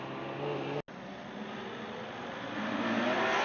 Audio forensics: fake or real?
real